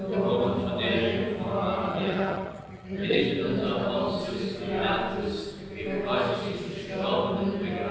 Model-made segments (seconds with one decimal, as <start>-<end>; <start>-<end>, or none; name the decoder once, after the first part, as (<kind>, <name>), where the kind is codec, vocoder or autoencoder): 1.9-3.2 (vocoder, HiFi-GAN)